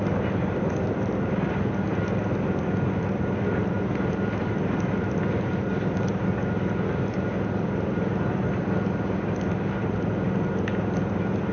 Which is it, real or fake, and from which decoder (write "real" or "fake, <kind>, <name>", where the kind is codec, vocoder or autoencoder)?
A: real